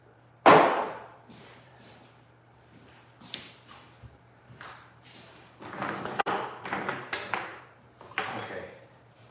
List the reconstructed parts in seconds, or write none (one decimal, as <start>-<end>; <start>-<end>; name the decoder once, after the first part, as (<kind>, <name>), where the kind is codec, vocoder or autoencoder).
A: 0.5-5.4 (vocoder, BigVGAN v2); 7.5-9.3